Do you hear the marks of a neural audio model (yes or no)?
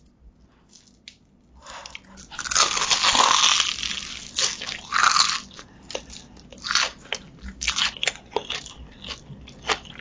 no